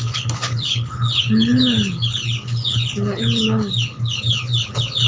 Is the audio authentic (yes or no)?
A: no